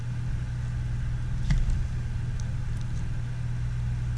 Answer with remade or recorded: recorded